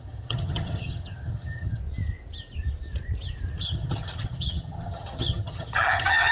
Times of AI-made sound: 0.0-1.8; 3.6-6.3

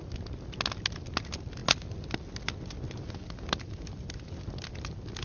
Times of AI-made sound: none

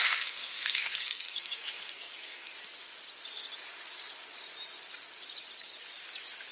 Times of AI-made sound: 0.0-2.5

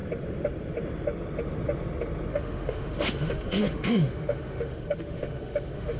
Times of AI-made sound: 2.3-6.0

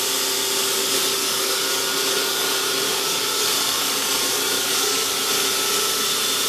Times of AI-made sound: 1.2-5.1

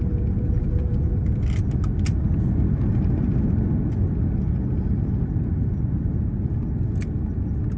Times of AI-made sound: 4.0-5.2